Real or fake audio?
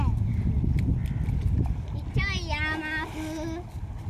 real